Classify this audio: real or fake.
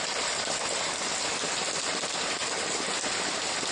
real